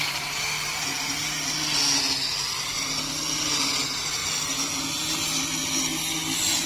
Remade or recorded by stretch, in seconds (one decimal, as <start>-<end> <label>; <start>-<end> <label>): 0.0-6.7 recorded